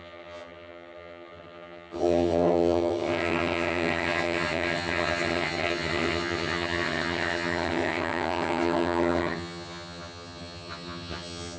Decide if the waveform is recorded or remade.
remade